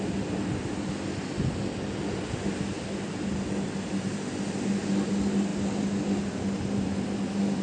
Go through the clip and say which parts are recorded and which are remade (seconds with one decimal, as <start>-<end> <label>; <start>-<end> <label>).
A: 0.0-7.6 recorded